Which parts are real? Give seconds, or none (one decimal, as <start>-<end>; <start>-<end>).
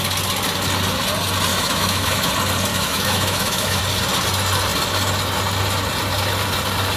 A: 0.0-1.5; 2.3-2.7; 3.8-7.0